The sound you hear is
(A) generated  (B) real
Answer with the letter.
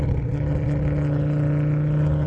B